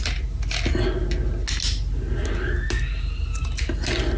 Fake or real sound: real